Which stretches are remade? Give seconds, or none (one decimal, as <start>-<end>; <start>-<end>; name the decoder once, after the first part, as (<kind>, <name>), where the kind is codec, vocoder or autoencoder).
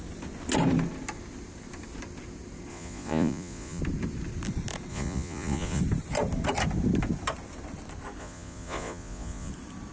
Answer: 2.7-3.8 (vocoder, Vocos); 4.9-5.8; 8.2-9.5